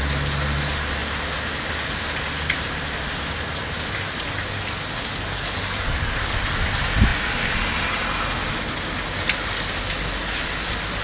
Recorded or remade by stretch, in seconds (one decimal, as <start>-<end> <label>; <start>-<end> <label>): 0.0-5.0 recorded; 5.0-6.4 remade; 6.4-11.0 recorded